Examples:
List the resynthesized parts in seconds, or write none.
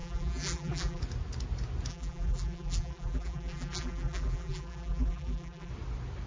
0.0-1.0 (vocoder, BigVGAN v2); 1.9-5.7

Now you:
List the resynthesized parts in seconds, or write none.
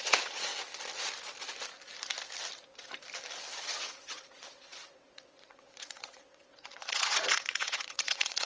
0.0-0.5 (vocoder, WaveNeXt); 3.6-8.5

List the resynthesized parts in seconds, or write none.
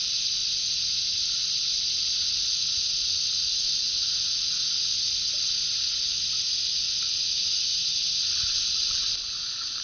0.0-0.4 (vocoder, BigVGAN v2); 3.3-4.0; 7.0-7.8; 8.6-9.8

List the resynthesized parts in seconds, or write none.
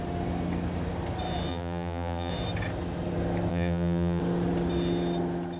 1.5-2.3 (vocoder, BigVGAN v2); 3.5-4.2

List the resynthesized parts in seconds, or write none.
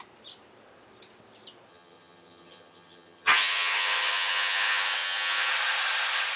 1.7-5.5 (vocoder, HiFi-GAN)